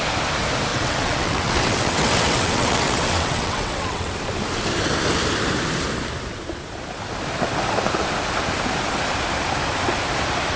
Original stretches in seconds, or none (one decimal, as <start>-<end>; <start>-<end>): 0.0-0.7; 4.1-10.6

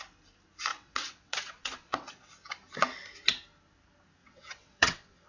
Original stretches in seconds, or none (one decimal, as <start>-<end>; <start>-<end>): 0.0-0.7; 2.3-4.2

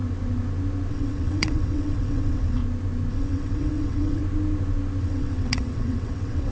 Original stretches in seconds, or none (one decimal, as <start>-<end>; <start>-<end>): 0.0-0.9; 2.6-3.1; 4.2-5.0

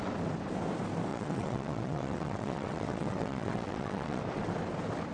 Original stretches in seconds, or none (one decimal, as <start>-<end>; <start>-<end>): 0.0-1.1; 4.2-5.1